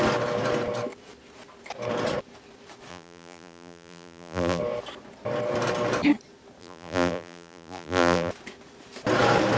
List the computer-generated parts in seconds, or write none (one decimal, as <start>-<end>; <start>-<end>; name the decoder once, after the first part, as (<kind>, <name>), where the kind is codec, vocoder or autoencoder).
2.9-4.6 (vocoder, BigVGAN v2); 6.6-8.3